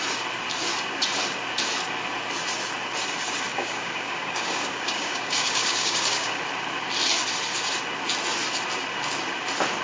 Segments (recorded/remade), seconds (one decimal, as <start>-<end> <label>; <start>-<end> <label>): 0.0-3.5 recorded; 3.5-6.4 remade; 6.4-9.8 recorded